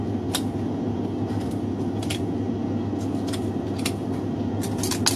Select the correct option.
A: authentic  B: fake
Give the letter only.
A